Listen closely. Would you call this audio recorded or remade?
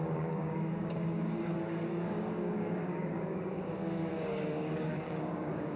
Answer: remade